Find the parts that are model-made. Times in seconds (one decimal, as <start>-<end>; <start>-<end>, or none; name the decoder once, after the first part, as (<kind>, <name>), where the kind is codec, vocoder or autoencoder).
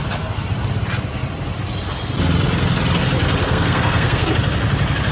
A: 3.4-4.3 (codec, SNAC)